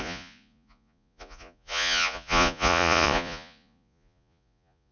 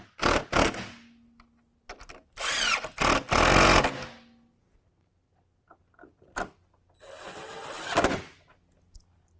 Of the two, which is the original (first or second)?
second